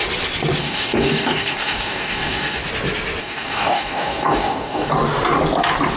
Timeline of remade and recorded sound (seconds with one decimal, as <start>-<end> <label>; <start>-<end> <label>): 0.0-0.6 recorded; 0.6-2.6 remade; 2.6-3.2 recorded; 3.2-4.9 remade; 4.9-6.0 recorded